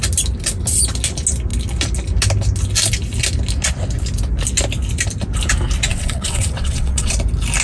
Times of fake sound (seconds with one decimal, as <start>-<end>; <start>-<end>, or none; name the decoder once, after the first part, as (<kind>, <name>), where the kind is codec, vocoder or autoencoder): 5.9-7.1 (vocoder, WaveNeXt)